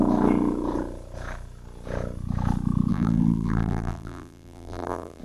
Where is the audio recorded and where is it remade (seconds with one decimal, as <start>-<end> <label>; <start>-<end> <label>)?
0.0-2.9 recorded; 2.9-5.2 remade